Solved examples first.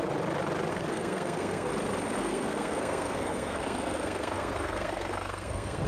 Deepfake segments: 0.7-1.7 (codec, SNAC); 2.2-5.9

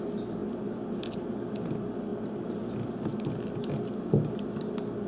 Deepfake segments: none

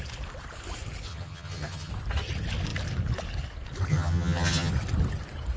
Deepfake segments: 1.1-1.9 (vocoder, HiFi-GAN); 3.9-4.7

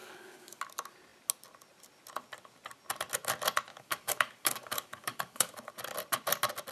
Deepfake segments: 0.0-0.6 (codec, DAC); 3.7-5.7

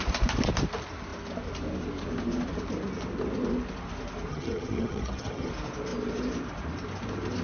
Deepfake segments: 4.3-5.5 (vocoder, HiFi-GAN)